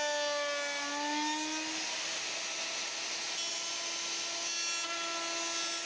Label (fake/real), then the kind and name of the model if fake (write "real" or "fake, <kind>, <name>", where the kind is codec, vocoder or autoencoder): real